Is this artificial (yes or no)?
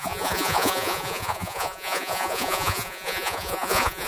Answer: yes